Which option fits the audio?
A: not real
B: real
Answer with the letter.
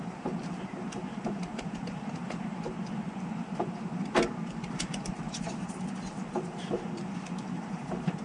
A